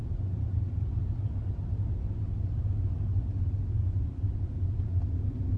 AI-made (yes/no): no